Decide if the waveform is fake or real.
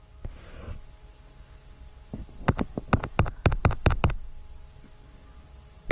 real